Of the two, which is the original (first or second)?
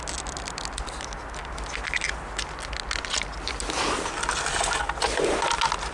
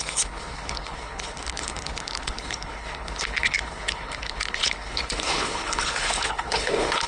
first